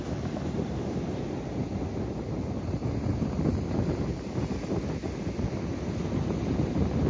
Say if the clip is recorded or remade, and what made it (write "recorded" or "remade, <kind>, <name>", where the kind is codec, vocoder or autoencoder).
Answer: recorded